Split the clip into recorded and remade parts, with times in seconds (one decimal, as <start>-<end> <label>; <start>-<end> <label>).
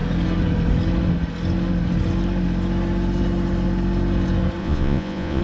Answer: 0.0-4.6 recorded; 4.6-5.4 remade